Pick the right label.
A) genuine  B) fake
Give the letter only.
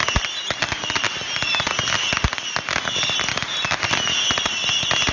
A